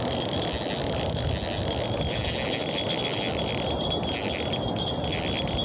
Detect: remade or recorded recorded